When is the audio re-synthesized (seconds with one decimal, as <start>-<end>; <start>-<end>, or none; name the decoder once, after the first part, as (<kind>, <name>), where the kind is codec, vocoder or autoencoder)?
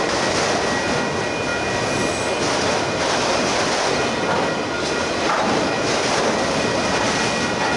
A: none